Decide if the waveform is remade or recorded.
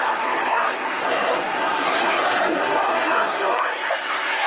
remade